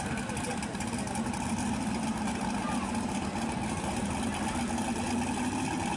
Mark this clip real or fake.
real